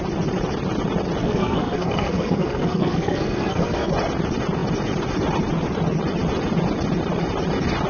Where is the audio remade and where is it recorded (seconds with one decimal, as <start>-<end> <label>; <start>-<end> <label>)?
0.0-1.2 recorded; 1.2-3.9 remade; 3.9-7.9 recorded